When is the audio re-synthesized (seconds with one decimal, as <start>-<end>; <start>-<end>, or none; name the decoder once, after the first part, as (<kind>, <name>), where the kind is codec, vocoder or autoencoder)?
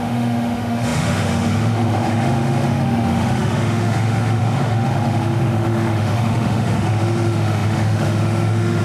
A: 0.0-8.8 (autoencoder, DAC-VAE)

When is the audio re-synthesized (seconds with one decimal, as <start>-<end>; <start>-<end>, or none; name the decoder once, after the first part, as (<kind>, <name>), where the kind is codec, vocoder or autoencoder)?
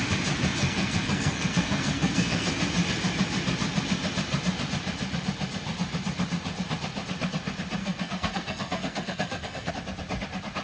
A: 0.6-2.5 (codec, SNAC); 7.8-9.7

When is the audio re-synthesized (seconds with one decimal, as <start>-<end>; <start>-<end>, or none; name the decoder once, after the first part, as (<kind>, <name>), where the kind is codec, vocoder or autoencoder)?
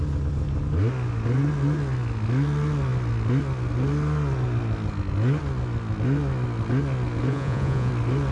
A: 7.3-7.9 (vocoder, Vocos)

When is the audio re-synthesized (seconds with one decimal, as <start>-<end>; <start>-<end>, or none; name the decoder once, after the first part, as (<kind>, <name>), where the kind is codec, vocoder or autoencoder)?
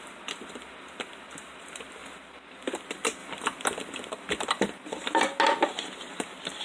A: 3.2-5.2 (vocoder, BigVGAN v2)